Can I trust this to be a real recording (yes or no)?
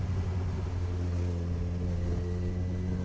yes